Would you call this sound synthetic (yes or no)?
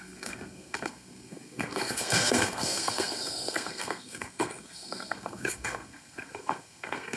yes